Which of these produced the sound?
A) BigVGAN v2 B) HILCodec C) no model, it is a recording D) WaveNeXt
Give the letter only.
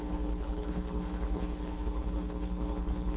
B